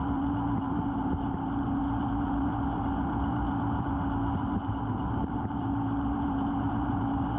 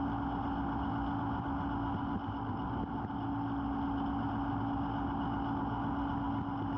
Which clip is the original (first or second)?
second